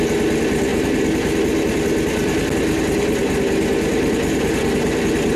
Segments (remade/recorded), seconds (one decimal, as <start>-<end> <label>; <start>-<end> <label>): 0.0-5.4 recorded